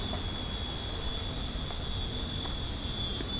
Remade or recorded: recorded